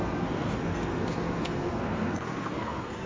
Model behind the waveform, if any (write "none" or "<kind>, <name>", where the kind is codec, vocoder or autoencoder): codec, SNAC